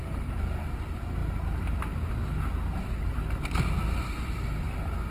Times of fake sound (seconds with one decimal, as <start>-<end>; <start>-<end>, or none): none